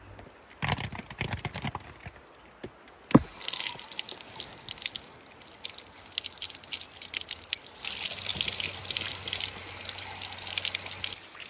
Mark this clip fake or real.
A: real